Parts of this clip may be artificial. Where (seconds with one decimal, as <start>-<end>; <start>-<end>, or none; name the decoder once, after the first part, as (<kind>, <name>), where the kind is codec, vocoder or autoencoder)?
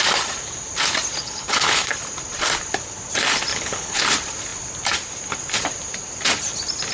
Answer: 1.2-1.8 (codec, HILCodec); 3.5-4.0